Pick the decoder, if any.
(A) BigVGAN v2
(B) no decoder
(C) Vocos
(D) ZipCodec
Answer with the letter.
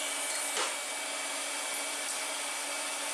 B